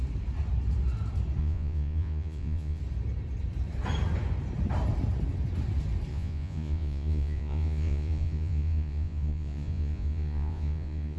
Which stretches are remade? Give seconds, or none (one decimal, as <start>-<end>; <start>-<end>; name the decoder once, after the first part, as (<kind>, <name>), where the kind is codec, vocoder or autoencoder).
1.4-2.8 (vocoder, Vocos); 6.1-11.2